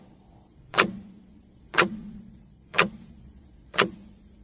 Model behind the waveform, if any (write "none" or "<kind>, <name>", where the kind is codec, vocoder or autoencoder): vocoder, Vocos